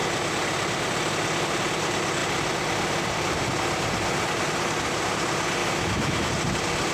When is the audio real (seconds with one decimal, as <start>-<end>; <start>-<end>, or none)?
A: 0.0-5.6; 6.3-6.9